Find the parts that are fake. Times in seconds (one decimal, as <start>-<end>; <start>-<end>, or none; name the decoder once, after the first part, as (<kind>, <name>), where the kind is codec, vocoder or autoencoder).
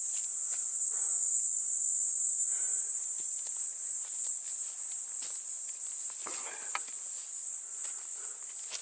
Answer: 0.8-4.4 (vocoder, BigVGAN v2); 7.2-8.3